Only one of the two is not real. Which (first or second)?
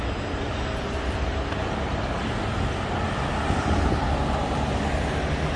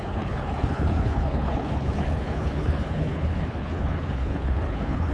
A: second